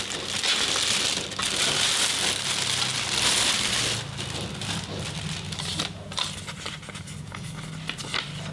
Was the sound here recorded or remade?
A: recorded